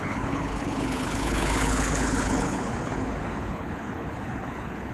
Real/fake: fake